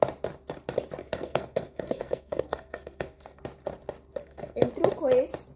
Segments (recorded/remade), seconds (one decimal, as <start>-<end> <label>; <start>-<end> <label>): 0.0-1.0 recorded; 1.0-3.4 remade; 3.4-4.2 recorded; 4.2-4.7 remade; 4.7-5.6 recorded